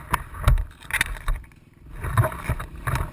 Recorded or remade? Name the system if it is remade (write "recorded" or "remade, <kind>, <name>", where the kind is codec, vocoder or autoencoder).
recorded